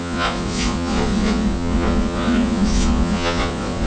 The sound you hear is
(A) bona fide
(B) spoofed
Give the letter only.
B